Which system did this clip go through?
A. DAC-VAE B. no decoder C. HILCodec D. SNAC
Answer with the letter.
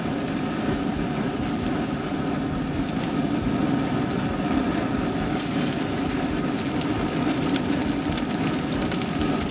B